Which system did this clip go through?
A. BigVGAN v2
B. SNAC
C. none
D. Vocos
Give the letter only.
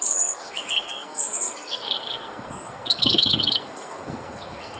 B